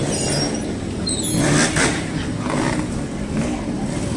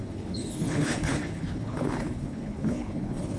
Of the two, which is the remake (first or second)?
second